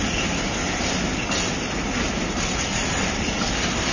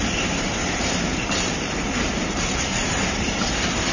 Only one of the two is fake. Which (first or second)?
second